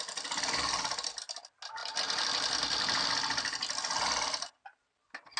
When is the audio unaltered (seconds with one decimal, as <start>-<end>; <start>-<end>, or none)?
0.0-5.4

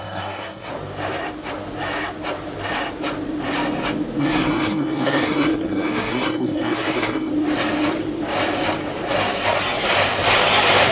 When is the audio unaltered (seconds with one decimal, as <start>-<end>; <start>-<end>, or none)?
0.7-4.2; 7.3-10.9